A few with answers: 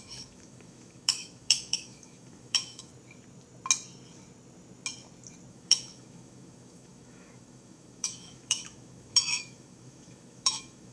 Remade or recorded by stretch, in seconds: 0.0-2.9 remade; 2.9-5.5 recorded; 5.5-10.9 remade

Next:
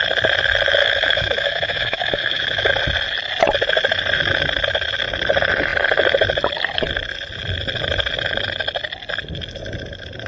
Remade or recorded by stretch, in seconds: 0.0-0.8 recorded; 0.8-2.7 remade; 2.7-10.3 recorded

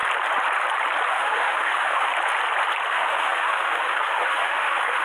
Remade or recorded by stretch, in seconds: 0.0-1.1 recorded; 1.1-2.1 remade; 2.1-2.9 recorded; 2.9-5.0 remade

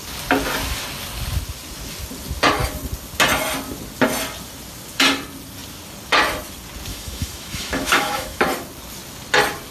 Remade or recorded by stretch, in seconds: 0.0-6.9 recorded; 6.9-8.4 remade; 8.4-9.7 recorded

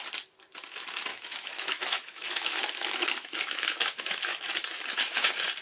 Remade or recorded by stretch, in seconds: 0.0-1.1 recorded; 1.1-4.5 remade; 4.5-5.6 recorded

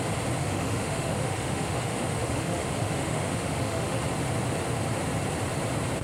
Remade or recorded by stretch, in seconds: 0.0-0.4 recorded; 0.4-4.0 remade; 4.0-6.0 recorded

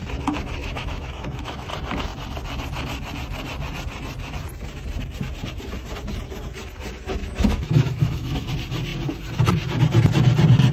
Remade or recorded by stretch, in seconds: 0.0-0.6 recorded; 0.6-1.7 remade; 1.7-7.2 recorded; 7.2-8.5 remade; 8.5-10.7 recorded